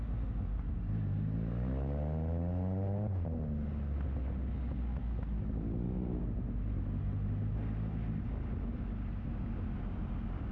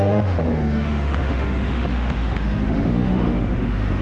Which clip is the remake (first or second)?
second